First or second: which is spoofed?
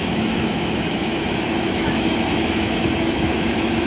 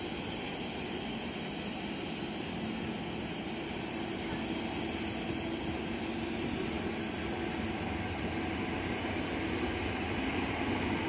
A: first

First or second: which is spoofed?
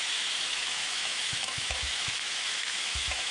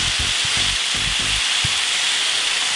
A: first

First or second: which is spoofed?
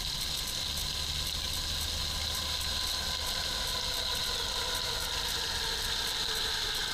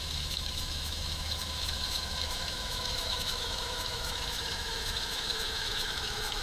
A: second